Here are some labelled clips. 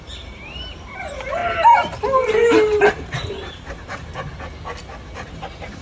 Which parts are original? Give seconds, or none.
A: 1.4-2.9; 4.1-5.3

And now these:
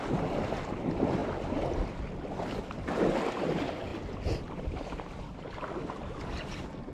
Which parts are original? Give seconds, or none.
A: 1.2-1.7

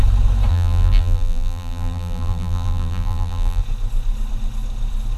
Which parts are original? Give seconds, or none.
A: 0.0-0.5; 3.6-5.2

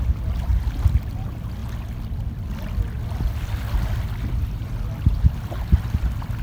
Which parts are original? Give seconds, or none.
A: 0.5-1.1; 1.6-4.3

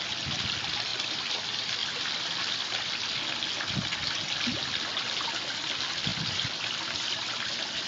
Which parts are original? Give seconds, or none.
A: 0.0-0.9; 1.4-6.1; 7.5-7.9

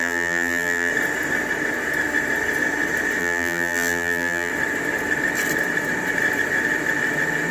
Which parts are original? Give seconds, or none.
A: 0.9-3.2; 4.5-7.5

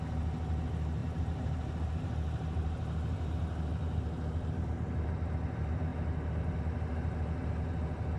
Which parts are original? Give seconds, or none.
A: 0.0-1.0; 1.8-8.2

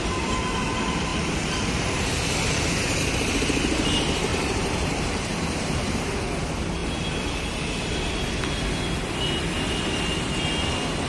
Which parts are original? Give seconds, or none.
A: 0.0-1.1; 3.0-4.3; 6.2-11.1